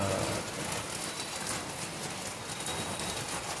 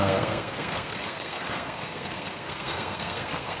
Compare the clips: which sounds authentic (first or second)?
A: first